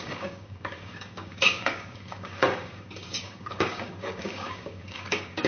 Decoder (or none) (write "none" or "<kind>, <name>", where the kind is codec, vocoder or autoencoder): codec, DAC